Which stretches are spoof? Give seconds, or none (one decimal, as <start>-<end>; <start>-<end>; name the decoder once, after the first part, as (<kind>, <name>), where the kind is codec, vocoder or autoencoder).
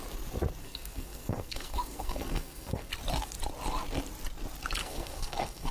0.6-2.9 (codec, SNAC); 4.8-5.7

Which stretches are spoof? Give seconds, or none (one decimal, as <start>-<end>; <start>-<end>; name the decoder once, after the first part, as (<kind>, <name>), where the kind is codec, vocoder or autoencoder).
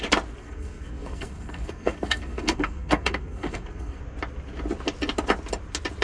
0.4-4.0 (codec, SNAC)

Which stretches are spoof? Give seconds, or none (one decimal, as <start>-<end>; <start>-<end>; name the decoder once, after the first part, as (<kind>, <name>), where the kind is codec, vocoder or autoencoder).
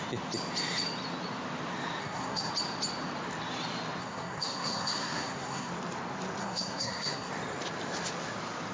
2.0-2.5 (codec, SNAC); 4.0-5.7; 6.4-7.3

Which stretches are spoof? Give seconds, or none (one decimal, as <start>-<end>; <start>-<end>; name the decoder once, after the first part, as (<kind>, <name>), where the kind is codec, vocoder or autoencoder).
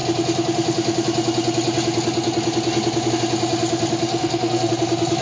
4.1-4.7 (codec, SNAC)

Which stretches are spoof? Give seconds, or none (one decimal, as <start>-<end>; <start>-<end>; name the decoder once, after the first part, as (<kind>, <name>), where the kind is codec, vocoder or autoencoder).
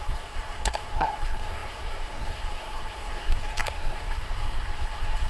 0.0-5.3 (codec, SNAC)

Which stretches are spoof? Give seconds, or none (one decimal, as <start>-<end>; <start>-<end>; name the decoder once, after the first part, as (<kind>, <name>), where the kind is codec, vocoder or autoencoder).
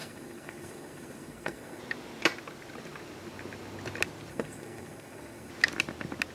0.0-1.8 (codec, SNAC); 4.3-5.5